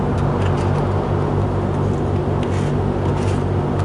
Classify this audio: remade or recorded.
recorded